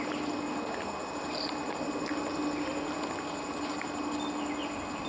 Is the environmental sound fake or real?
real